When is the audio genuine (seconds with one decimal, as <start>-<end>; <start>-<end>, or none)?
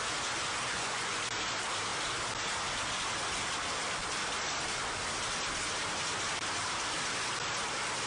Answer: 0.0-0.7; 1.2-8.1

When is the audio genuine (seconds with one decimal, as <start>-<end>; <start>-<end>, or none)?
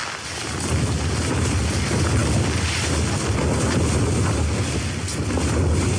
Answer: 0.0-6.0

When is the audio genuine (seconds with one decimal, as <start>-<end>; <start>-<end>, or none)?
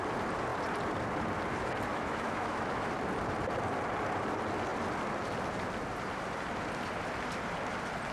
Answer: 0.0-1.9; 2.9-8.1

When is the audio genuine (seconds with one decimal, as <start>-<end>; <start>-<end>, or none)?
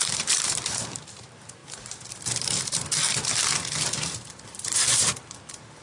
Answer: none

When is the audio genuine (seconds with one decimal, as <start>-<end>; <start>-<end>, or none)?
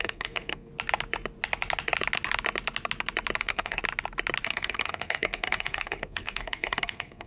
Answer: 0.7-3.4; 3.8-4.4